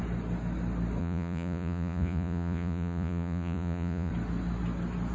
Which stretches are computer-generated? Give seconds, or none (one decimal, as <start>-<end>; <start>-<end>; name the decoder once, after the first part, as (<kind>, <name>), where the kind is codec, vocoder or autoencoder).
1.0-4.1 (vocoder, Vocos)